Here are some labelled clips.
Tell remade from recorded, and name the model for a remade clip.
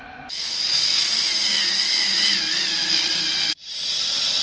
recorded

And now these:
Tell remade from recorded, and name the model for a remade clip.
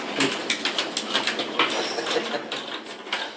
recorded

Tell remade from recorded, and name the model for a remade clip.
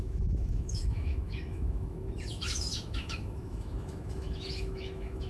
remade, autoencoder, DAC-VAE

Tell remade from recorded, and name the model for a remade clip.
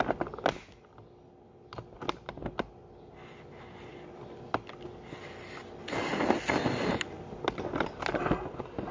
recorded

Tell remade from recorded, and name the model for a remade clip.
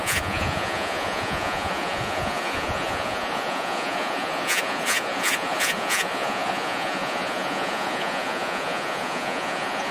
remade, vocoder, Vocos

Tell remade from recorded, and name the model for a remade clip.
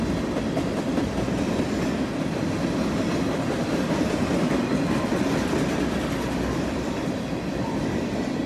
recorded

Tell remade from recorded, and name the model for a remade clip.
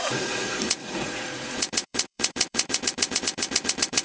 remade, vocoder, Vocos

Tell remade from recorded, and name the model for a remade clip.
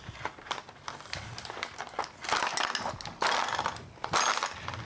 recorded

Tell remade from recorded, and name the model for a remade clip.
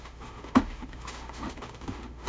remade, autoencoder, DAC-VAE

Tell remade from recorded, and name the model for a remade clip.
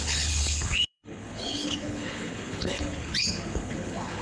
remade, codec, HILCodec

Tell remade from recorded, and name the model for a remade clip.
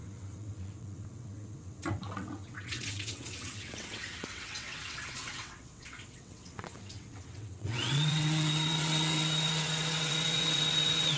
remade, vocoder, WaveNeXt